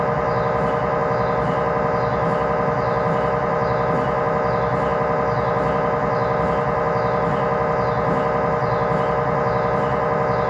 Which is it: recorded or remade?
recorded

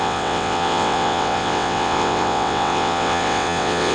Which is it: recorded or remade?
remade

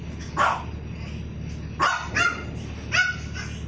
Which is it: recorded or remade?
recorded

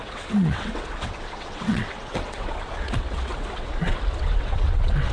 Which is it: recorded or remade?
remade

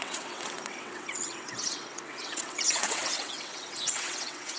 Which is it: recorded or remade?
remade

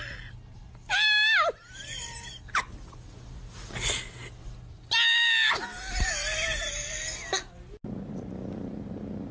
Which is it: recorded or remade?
recorded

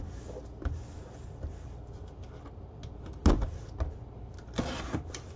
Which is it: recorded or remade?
recorded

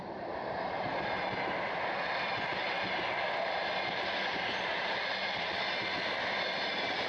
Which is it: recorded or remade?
recorded